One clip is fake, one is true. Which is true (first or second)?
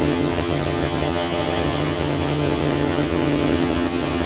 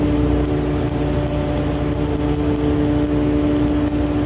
second